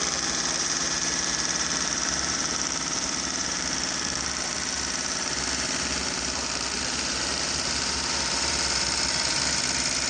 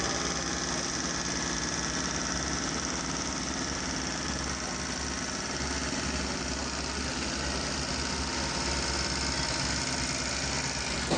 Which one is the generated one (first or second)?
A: first